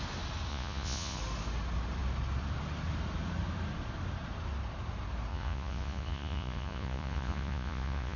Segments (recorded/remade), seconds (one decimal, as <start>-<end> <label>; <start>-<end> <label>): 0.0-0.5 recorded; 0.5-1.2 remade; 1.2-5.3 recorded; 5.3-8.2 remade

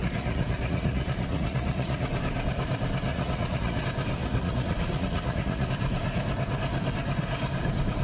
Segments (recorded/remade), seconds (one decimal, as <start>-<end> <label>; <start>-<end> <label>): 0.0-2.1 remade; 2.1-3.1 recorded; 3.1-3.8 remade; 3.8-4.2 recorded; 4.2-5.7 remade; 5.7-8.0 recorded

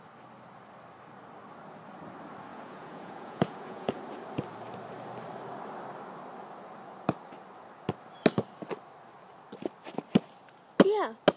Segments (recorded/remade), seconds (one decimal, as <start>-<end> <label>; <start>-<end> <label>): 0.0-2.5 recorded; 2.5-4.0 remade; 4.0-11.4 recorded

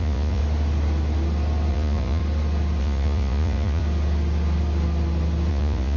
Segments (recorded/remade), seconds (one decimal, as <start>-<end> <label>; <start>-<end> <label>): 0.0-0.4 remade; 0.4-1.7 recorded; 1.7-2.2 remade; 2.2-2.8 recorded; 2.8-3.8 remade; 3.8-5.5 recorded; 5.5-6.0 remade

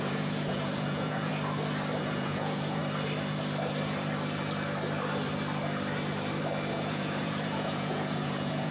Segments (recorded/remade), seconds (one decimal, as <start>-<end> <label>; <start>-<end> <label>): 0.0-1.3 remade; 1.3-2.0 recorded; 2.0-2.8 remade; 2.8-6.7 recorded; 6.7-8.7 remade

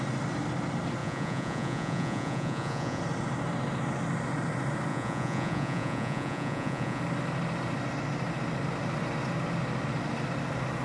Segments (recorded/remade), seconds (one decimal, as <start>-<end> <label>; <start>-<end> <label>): 0.0-1.0 recorded; 1.0-3.0 remade; 3.0-4.9 recorded; 4.9-7.0 remade; 7.0-10.8 recorded

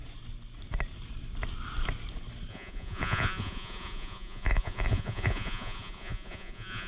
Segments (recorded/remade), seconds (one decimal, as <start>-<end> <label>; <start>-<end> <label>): 0.0-2.5 recorded; 2.5-6.9 remade